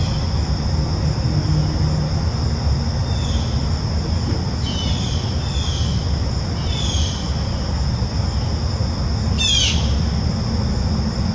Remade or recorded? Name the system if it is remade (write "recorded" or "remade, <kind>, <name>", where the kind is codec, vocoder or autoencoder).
recorded